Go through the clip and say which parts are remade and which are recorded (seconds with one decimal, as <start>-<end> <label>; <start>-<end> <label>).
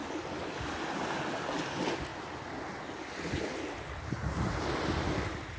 0.0-5.6 recorded